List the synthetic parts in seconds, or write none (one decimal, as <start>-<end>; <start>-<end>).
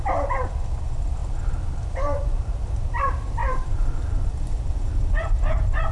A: none